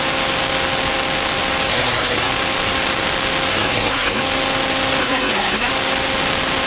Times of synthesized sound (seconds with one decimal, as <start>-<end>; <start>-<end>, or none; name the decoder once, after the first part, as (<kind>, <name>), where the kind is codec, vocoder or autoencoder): 1.7-2.3 (codec, SNAC); 3.5-4.2; 5.0-5.7